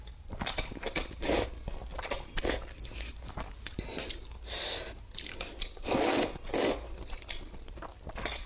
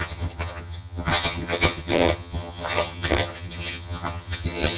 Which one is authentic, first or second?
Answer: first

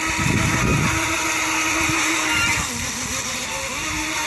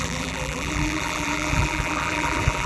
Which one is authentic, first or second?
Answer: first